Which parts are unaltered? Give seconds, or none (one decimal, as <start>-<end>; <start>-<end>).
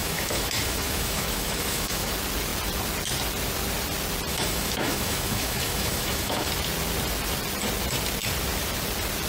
2.1-4.3; 6.5-9.3